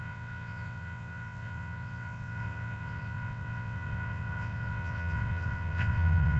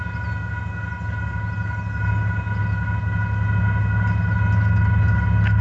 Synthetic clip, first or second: first